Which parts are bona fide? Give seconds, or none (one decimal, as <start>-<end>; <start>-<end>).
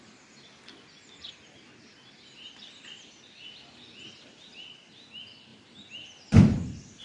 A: 0.0-7.0